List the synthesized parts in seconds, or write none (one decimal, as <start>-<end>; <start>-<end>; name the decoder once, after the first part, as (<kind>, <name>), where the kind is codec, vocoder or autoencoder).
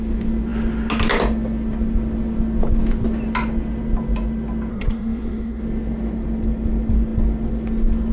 4.7-5.6 (codec, SNAC)